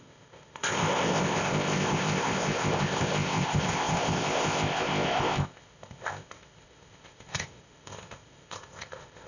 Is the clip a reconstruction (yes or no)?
yes